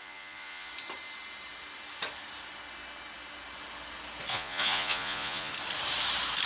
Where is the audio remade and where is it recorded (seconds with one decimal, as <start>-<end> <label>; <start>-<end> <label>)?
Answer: 0.0-0.7 remade; 0.7-4.3 recorded; 4.3-5.5 remade; 5.5-6.5 recorded

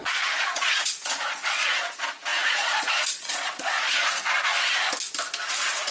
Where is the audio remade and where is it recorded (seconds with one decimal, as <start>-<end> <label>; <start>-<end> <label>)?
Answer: 0.0-4.2 remade; 4.2-5.5 recorded; 5.5-5.9 remade